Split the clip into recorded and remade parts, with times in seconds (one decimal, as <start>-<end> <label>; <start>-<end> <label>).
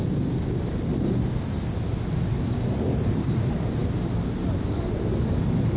0.0-5.8 recorded